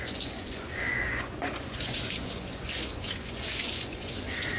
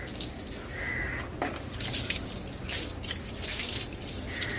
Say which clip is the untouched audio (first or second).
second